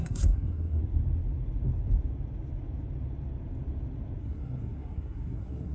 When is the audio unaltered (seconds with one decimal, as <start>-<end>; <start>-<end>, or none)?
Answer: 0.8-4.2